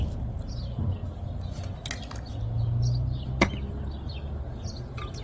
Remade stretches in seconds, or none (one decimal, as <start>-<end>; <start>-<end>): none